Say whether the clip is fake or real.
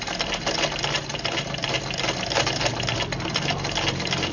real